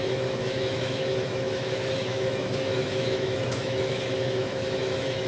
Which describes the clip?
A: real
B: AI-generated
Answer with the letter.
B